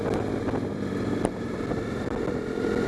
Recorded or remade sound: recorded